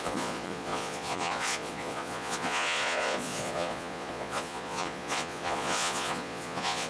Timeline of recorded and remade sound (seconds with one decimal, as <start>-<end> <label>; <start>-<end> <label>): 0.0-6.9 remade